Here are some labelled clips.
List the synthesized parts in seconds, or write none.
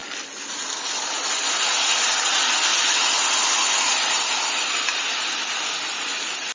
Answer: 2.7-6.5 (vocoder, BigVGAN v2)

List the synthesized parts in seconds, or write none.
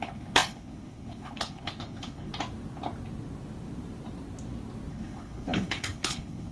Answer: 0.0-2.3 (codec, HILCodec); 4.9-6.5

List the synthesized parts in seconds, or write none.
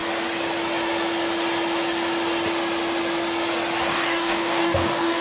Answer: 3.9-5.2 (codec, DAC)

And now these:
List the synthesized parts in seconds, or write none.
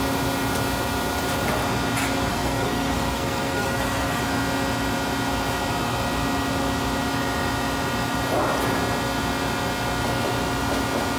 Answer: 2.3-4.2 (codec, SNAC)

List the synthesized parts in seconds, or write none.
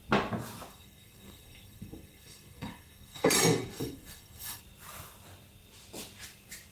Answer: 0.7-4.6 (codec, SNAC)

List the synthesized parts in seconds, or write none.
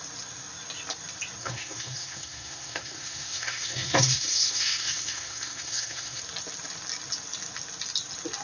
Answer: 1.4-6.2 (codec, SNAC)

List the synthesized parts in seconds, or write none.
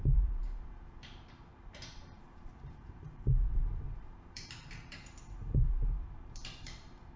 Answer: 0.0-7.2 (vocoder, BigVGAN v2)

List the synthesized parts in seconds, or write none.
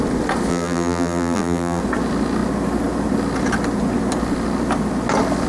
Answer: 0.5-1.8 (vocoder, BigVGAN v2)